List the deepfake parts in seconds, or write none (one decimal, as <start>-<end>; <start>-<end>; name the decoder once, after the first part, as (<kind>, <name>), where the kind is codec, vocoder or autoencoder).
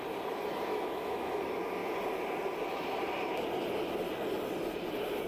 0.7-1.4 (autoencoder, DAC-VAE)